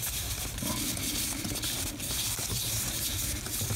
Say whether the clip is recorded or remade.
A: remade